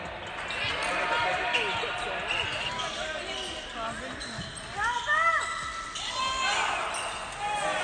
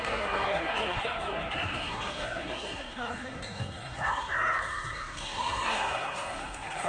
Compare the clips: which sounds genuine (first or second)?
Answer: first